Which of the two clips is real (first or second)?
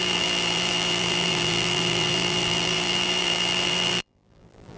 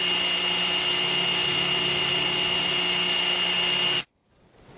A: second